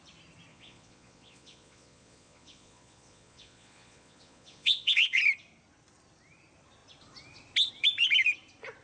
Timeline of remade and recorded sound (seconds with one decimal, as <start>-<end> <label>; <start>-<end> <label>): 0.0-0.5 recorded; 0.5-5.2 remade; 5.2-8.8 recorded